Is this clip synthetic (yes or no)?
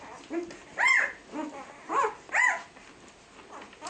no